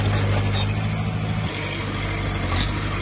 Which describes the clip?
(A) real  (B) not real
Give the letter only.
A